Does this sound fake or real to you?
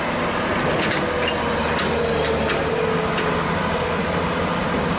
real